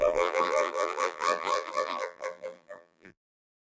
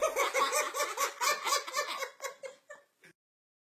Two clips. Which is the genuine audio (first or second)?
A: second